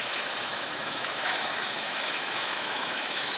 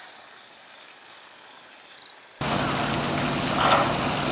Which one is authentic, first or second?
second